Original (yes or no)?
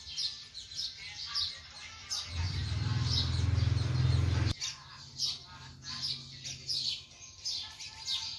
yes